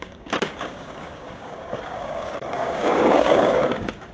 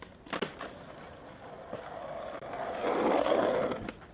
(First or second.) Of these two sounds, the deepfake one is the first